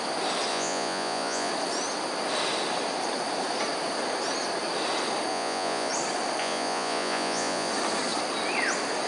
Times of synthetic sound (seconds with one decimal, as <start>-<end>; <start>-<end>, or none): 0.5-1.5; 5.3-5.9; 6.4-7.7